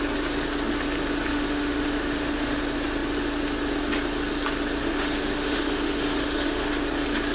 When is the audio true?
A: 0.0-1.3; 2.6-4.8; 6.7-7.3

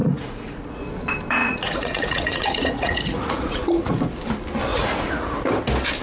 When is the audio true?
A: 0.8-1.4; 3.9-4.7; 5.5-6.0

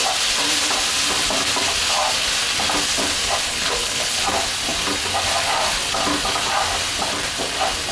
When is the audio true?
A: 0.0-3.5; 4.2-7.9

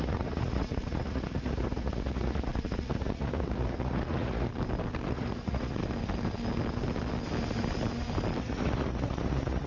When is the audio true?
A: 4.5-5.1; 5.8-8.4

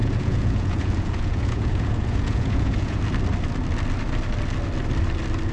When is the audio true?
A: 3.0-5.5

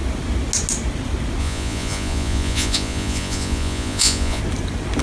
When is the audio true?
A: 0.0-1.4; 4.4-5.0